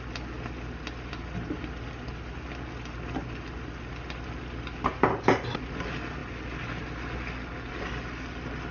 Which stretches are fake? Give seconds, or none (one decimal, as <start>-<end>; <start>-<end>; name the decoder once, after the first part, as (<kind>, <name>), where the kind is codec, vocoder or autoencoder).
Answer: none